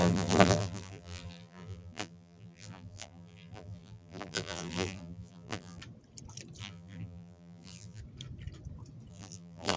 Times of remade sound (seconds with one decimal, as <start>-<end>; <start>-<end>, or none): 0.0-5.8; 6.6-8.0; 9.1-9.8